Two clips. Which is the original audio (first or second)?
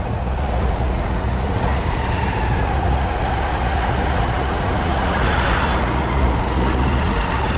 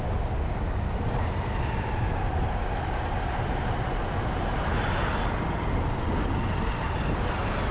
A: second